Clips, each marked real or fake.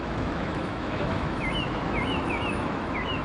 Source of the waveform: fake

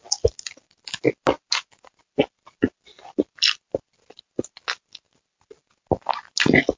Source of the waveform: real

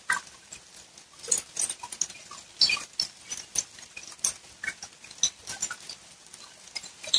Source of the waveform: real